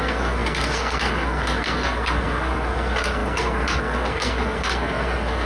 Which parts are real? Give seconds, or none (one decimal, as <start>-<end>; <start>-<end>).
none